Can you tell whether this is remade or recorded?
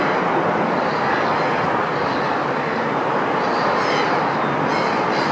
recorded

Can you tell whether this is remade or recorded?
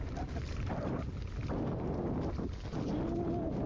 recorded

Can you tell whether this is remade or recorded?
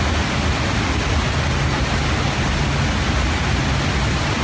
recorded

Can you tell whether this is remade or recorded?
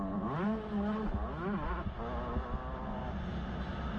recorded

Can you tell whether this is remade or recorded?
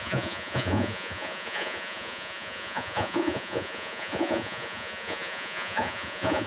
remade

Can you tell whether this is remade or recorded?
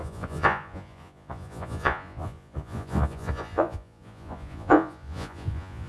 remade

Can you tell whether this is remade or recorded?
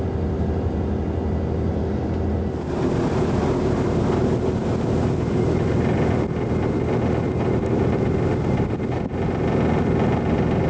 recorded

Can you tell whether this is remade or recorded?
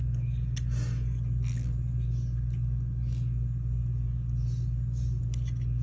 recorded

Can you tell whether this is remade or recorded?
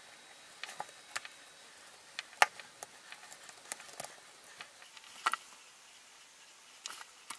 recorded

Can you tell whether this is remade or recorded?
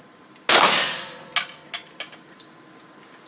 recorded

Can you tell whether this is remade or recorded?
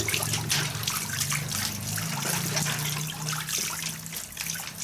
recorded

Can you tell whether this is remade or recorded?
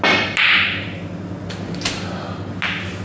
recorded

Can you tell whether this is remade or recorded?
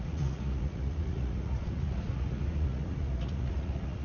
remade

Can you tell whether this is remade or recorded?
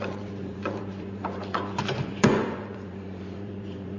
remade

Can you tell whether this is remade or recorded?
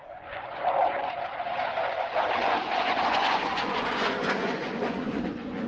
remade